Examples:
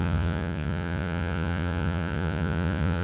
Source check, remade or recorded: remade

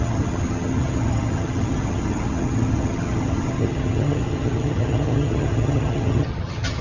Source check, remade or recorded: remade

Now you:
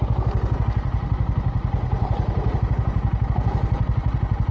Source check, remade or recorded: recorded